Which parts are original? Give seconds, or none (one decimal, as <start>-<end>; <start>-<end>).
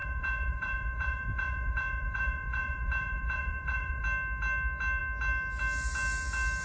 4.0-6.6